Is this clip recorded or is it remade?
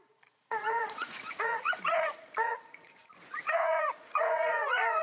remade